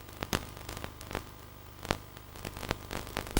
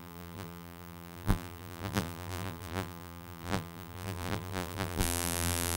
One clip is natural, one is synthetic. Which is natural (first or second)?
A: first